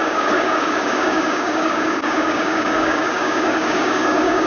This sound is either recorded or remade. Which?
remade